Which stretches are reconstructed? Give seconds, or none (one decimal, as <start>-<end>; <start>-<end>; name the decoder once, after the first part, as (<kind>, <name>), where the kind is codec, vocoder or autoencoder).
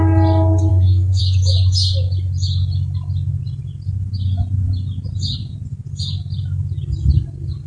0.7-1.2 (codec, SNAC)